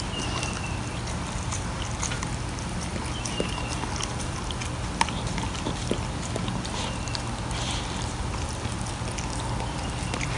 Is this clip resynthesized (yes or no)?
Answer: no